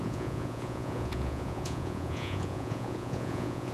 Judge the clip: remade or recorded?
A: remade